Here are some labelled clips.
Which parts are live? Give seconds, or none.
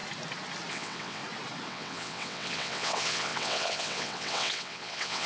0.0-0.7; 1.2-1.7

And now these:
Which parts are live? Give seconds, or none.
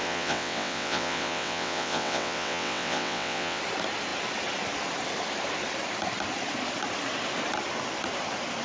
3.6-8.6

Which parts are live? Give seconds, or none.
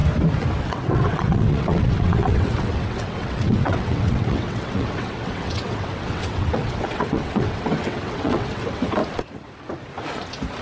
0.0-0.6; 9.0-10.6